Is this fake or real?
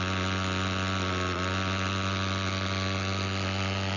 real